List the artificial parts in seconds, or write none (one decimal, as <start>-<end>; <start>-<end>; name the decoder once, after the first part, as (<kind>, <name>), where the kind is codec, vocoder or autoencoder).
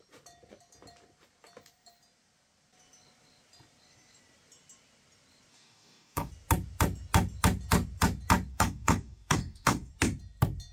5.5-6.3 (codec, DAC); 8.5-9.9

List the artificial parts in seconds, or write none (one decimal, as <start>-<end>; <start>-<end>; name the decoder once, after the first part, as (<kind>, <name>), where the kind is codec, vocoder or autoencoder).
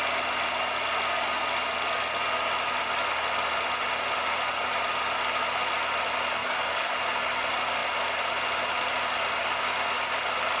6.4-7.0 (codec, DAC)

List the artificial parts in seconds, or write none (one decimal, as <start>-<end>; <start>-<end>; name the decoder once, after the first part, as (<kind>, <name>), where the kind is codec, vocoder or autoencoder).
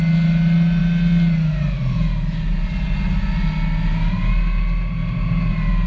none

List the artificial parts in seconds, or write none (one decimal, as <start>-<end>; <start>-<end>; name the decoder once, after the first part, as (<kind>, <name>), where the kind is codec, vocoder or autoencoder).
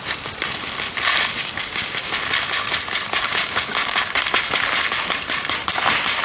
1.4-2.1 (codec, DAC); 3.3-4.2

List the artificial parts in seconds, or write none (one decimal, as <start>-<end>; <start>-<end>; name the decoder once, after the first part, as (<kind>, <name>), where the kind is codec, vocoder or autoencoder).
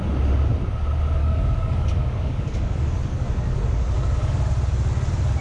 1.2-4.4 (codec, DAC)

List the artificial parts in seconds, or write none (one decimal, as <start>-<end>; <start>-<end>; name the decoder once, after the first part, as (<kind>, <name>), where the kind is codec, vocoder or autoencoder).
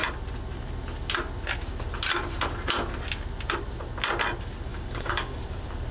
4.7-5.4 (codec, DAC)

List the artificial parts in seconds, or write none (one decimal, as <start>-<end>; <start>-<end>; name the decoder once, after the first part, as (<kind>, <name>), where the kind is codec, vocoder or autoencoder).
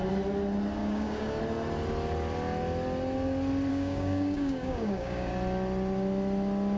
0.8-1.4 (codec, DAC); 3.7-5.3